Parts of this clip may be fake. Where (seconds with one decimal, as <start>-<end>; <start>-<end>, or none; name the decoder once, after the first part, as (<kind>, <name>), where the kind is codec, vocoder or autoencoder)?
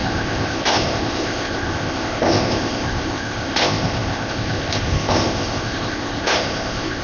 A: 0.0-7.0 (codec, ZipCodec)